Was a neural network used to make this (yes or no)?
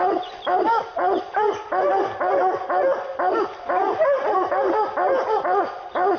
no